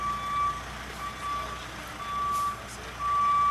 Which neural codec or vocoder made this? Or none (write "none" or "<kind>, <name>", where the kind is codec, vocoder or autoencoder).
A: none